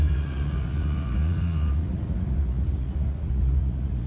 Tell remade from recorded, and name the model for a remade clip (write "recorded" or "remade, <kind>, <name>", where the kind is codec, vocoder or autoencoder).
remade, vocoder, Vocos